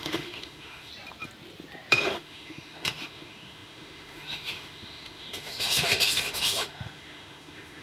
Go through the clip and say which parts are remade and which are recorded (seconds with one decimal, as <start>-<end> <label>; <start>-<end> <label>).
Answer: 0.0-0.9 remade; 0.9-1.9 recorded; 1.9-7.8 remade